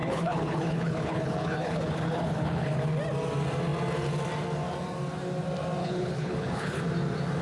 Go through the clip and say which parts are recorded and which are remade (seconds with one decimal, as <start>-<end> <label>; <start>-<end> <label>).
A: 0.0-2.8 remade; 2.8-5.8 recorded; 5.8-6.8 remade; 6.8-7.4 recorded